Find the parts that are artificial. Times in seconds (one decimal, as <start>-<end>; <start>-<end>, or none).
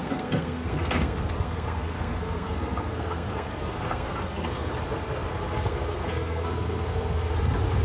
0.0-4.7; 5.3-7.3